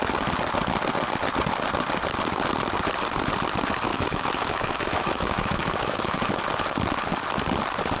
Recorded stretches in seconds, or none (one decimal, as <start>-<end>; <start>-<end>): 0.0-3.9; 6.4-8.0